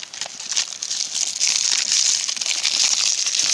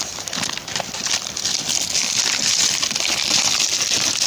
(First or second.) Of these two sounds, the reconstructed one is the second